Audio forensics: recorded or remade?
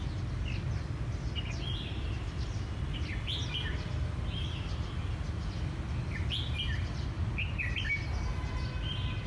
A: recorded